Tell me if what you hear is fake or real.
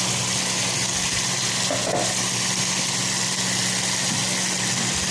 real